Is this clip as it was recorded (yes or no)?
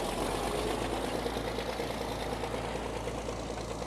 yes